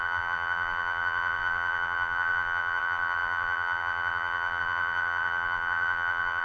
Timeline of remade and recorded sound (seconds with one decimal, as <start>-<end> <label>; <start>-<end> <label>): 0.0-6.4 remade